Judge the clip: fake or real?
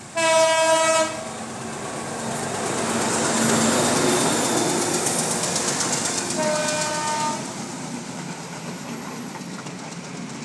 real